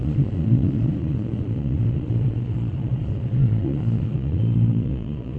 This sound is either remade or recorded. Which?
remade